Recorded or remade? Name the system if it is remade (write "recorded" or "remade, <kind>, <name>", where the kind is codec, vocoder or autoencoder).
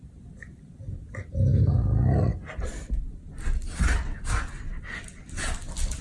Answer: recorded